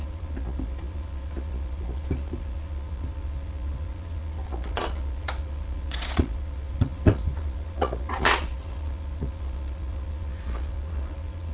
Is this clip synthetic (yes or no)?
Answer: yes